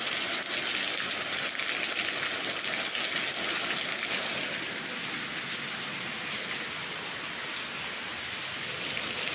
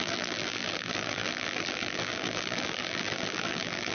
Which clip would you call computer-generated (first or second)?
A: second